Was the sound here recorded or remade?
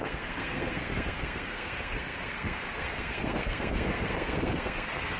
remade